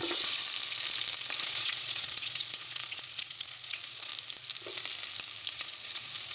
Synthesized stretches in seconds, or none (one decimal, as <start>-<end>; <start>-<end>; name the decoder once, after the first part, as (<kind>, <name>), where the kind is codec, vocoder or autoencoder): 0.0-0.4 (vocoder, Vocos); 1.4-4.1; 5.5-6.3